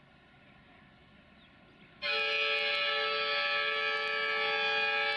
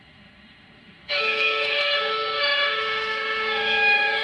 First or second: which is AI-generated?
second